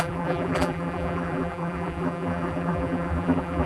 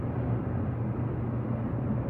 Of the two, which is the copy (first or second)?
first